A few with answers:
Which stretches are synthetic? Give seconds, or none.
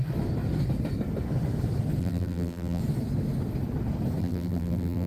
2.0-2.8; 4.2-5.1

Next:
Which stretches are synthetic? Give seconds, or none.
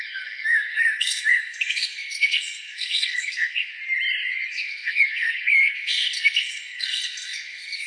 0.0-3.7; 4.5-7.9